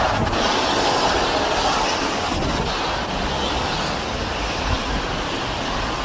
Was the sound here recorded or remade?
recorded